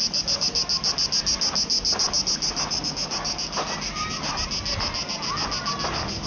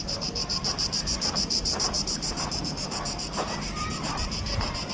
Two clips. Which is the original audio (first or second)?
first